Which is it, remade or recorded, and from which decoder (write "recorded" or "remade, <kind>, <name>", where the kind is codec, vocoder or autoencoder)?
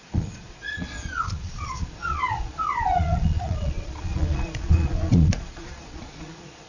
remade, vocoder, Vocos